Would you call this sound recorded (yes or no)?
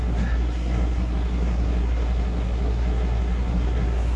no